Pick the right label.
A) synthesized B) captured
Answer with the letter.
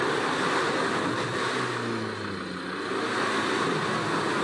B